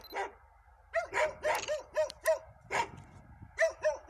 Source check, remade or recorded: recorded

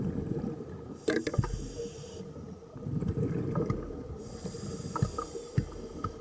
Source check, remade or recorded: recorded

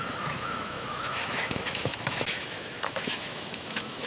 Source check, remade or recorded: remade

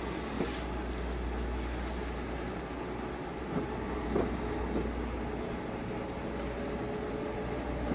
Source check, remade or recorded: recorded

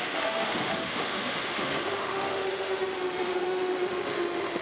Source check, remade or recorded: remade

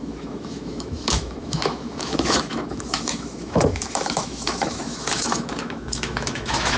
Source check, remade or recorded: remade